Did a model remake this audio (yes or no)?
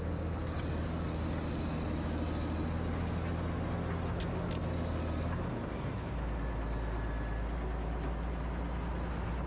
no